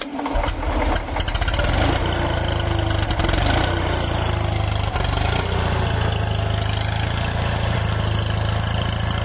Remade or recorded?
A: recorded